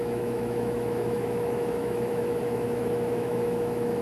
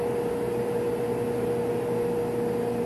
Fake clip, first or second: first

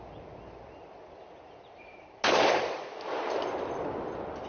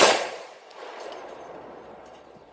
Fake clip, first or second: second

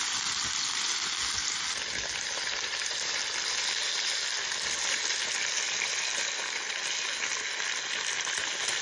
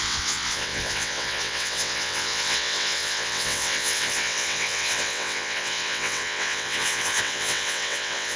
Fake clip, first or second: second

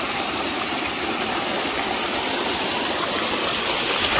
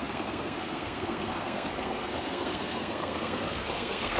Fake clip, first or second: second